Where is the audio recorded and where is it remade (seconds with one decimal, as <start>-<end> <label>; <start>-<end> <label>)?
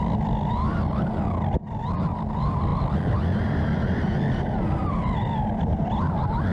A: 0.0-6.5 recorded